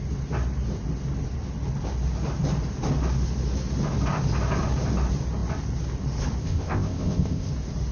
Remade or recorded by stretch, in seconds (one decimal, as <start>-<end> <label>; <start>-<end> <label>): 0.0-6.4 recorded; 6.4-7.5 remade; 7.5-7.9 recorded

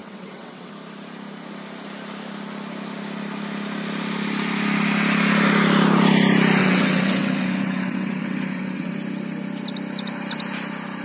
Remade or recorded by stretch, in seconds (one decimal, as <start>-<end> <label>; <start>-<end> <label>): 0.0-0.7 remade; 0.7-6.6 recorded; 6.6-8.9 remade; 8.9-11.0 recorded